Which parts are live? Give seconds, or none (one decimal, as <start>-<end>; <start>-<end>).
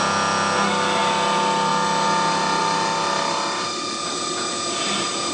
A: 0.0-5.3